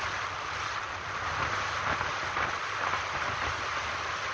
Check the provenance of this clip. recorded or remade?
recorded